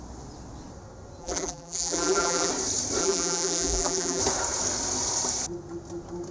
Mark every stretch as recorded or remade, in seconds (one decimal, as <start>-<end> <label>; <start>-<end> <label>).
0.0-1.2 recorded; 1.2-2.5 remade; 2.5-3.0 recorded; 3.0-4.2 remade; 4.2-6.3 recorded